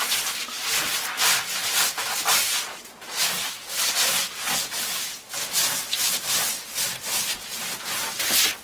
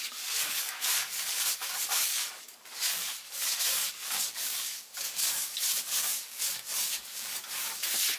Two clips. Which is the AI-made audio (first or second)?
second